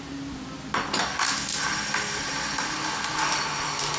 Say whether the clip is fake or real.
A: real